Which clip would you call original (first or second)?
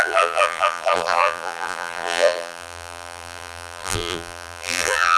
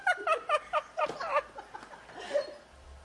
second